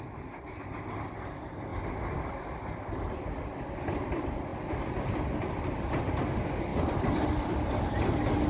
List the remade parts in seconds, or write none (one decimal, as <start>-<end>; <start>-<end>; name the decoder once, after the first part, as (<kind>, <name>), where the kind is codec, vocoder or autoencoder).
6.7-8.1 (vocoder, BigVGAN v2)